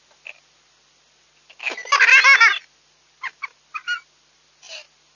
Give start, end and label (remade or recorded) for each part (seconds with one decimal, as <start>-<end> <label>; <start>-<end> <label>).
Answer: 0.0-5.2 recorded